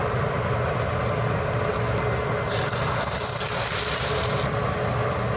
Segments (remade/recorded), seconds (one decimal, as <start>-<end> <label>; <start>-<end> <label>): 0.0-5.4 recorded